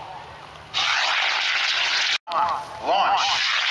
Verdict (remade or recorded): recorded